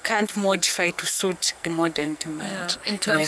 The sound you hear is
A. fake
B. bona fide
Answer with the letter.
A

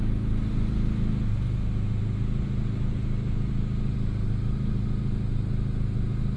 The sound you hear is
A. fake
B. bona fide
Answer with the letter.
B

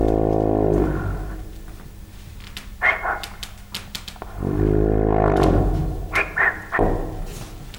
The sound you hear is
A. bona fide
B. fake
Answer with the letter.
A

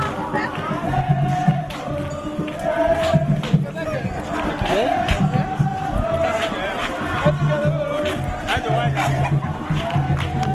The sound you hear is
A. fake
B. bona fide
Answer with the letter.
B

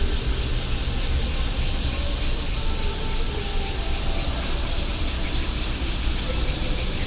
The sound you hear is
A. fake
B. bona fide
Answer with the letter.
B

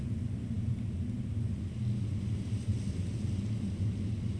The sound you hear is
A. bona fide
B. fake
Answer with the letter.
A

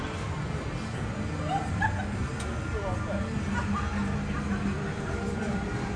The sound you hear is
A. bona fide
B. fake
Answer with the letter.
A